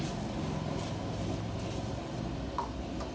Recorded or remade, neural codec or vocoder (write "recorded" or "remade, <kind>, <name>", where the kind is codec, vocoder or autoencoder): recorded